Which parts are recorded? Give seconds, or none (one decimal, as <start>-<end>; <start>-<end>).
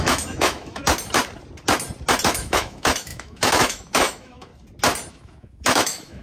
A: 0.8-2.3; 4.5-5.1